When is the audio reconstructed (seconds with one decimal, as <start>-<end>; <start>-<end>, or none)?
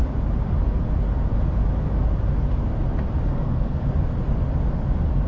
3.3-3.9